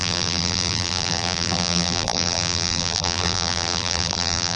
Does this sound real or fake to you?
fake